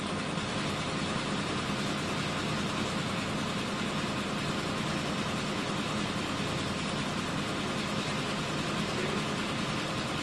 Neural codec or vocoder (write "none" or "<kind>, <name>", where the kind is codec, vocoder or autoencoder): none